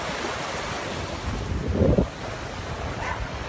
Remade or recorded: recorded